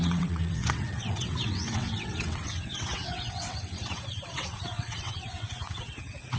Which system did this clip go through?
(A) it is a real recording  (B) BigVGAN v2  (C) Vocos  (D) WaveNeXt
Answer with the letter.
D